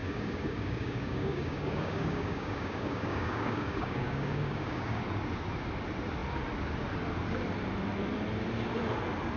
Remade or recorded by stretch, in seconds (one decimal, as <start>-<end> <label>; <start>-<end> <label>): 0.0-5.0 remade; 5.0-9.4 recorded